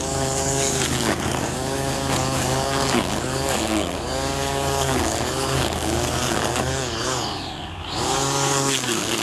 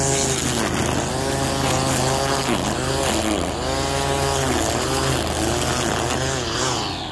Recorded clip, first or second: second